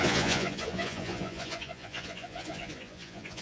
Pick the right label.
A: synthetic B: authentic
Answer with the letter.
A